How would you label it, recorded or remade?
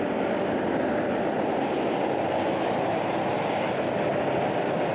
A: recorded